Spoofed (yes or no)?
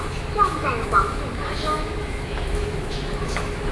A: yes